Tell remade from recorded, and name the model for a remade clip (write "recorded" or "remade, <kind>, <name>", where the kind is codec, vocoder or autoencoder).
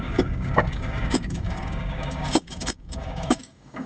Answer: remade, codec, DAC